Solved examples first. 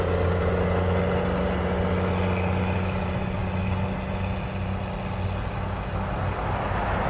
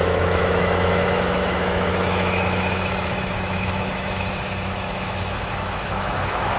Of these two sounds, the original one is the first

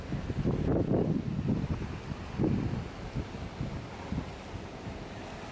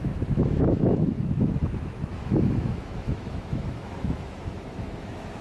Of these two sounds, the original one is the first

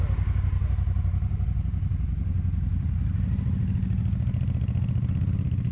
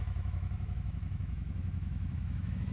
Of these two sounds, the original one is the first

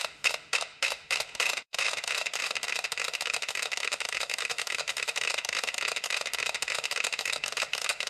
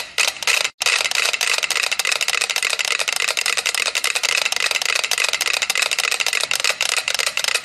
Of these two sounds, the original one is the second